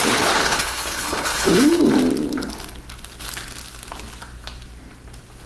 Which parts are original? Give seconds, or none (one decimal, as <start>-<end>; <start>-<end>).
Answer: 0.0-0.4; 1.8-5.5